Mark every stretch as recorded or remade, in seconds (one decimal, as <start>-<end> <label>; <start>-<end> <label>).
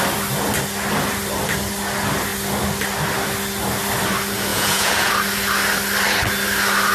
0.0-4.5 recorded; 4.5-5.1 remade; 5.1-6.9 recorded